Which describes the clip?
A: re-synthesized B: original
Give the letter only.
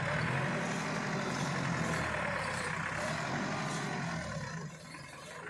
B